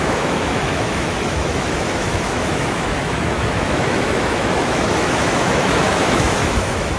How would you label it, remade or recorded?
remade